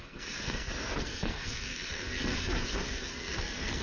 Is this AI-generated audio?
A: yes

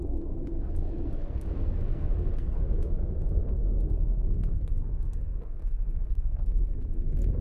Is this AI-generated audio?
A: yes